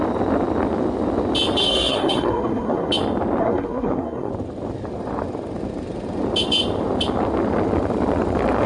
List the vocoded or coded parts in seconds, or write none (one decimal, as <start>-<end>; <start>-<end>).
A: 1.6-2.9; 3.4-4.3